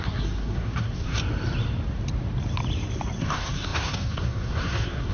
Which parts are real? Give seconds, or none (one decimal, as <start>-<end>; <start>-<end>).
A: 1.2-3.2